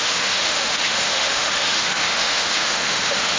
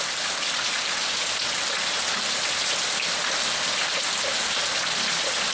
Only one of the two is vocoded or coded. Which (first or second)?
first